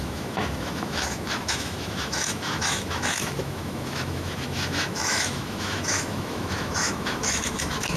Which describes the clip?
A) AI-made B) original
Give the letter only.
A